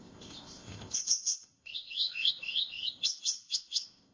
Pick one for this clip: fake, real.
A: fake